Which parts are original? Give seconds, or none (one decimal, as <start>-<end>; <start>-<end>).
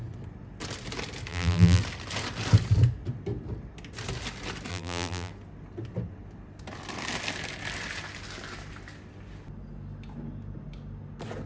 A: 0.0-1.3; 1.8-4.7; 5.3-11.5